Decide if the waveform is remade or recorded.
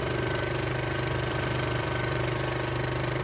remade